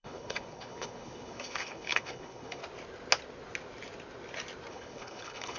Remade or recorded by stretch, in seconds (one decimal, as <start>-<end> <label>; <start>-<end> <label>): 0.0-2.6 remade; 2.6-4.7 recorded; 4.7-5.6 remade